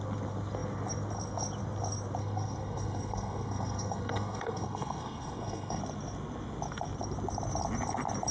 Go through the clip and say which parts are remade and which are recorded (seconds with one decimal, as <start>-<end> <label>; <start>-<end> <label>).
0.0-2.2 recorded; 2.2-5.8 remade; 5.8-8.3 recorded